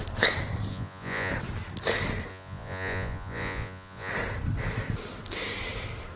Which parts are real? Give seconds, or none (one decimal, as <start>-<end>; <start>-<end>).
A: 0.0-0.7; 1.3-2.3; 4.1-6.2